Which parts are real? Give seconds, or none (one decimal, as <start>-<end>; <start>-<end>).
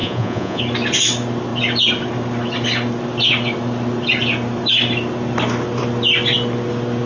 0.6-7.1